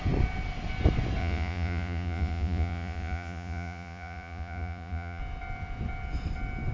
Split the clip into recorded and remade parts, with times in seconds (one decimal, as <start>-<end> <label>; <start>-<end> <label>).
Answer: 0.0-1.2 recorded; 1.2-5.2 remade; 5.2-6.7 recorded